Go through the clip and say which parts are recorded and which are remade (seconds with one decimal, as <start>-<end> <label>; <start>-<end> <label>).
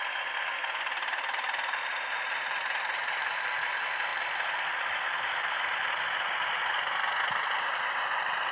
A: 0.0-8.5 recorded